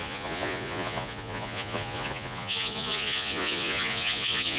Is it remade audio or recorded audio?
remade